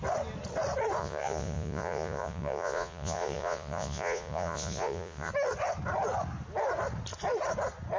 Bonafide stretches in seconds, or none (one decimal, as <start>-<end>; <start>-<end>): 0.0-1.0; 5.3-8.0